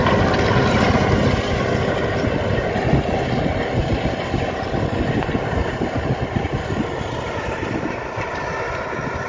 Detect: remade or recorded recorded